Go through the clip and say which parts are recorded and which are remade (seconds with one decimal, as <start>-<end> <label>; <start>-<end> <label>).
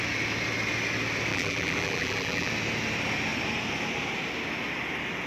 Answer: 0.0-1.3 recorded; 1.3-2.5 remade; 2.5-5.3 recorded